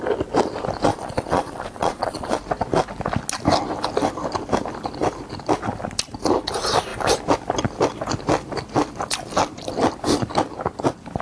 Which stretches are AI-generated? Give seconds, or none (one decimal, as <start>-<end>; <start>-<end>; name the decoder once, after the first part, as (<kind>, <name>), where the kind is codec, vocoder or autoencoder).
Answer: 0.9-2.4 (vocoder, Vocos)